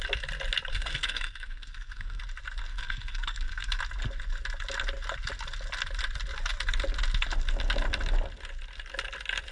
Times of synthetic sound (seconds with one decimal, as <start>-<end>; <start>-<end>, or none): 0.7-2.2; 2.7-3.8